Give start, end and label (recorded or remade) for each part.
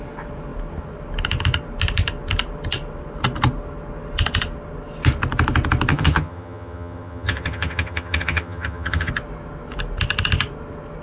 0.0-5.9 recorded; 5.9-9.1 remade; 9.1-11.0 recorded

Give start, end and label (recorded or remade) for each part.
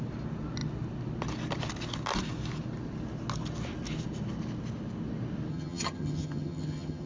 0.0-5.5 recorded; 5.5-7.1 remade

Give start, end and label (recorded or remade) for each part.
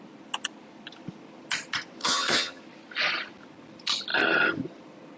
0.0-2.0 recorded; 2.0-2.6 remade; 2.6-5.2 recorded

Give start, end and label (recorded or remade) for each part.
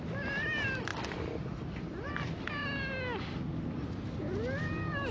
0.0-5.1 recorded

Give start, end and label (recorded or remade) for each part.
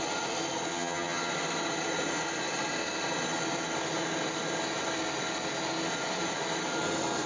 0.0-0.7 recorded; 0.7-1.3 remade; 1.3-7.3 recorded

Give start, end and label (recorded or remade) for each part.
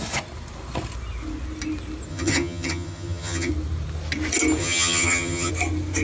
0.0-2.1 recorded; 2.1-3.5 remade; 3.5-4.6 recorded; 4.6-5.5 remade; 5.5-6.0 recorded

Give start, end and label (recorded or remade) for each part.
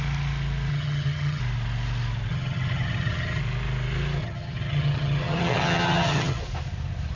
0.0-0.7 recorded; 0.7-1.4 remade; 1.4-2.3 recorded; 2.3-3.4 remade; 3.4-4.2 recorded; 4.2-6.4 remade; 6.4-7.2 recorded